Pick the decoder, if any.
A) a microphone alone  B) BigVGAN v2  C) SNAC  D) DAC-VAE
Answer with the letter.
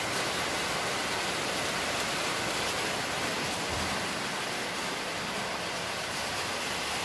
A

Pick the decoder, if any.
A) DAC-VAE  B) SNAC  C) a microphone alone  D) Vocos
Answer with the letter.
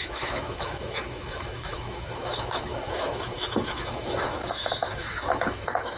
A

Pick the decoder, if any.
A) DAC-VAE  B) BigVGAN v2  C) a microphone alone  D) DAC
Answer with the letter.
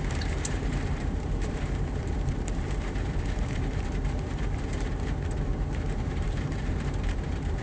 B